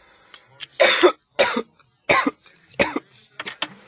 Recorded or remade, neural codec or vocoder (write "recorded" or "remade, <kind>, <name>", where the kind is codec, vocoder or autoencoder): recorded